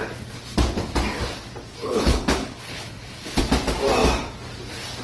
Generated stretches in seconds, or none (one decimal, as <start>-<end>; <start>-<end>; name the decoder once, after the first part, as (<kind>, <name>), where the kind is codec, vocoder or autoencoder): 1.7-3.4 (codec, HILCodec)